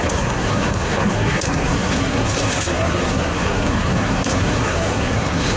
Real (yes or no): no